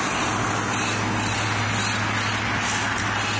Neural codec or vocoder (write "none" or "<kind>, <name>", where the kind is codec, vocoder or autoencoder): none